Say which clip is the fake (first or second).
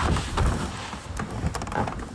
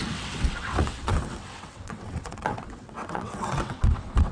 second